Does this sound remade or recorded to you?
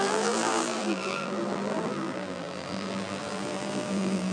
remade